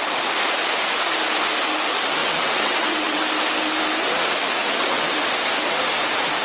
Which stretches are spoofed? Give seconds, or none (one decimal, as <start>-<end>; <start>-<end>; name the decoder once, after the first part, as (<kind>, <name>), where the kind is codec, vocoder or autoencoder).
2.2-3.2 (vocoder, WaveNeXt); 4.6-5.1